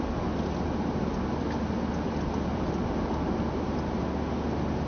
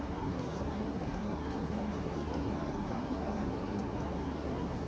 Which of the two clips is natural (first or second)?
first